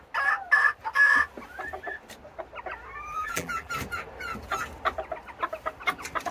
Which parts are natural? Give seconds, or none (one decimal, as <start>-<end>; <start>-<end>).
0.0-3.1; 3.7-6.3